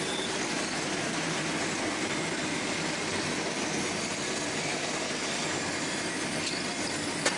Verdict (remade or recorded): recorded